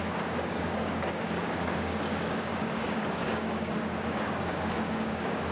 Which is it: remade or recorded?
remade